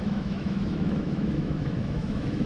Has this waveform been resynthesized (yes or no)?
yes